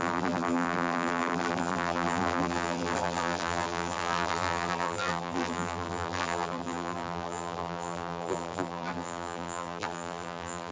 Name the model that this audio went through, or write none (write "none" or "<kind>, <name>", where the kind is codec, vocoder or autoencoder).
vocoder, BigVGAN v2